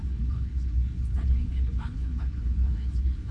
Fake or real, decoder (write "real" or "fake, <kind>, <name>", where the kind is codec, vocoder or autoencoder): fake, codec, HILCodec